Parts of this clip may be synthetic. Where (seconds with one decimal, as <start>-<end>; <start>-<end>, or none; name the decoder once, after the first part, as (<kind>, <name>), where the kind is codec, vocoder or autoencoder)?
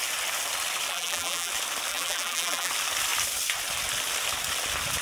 0.9-1.5 (vocoder, BigVGAN v2); 1.9-2.7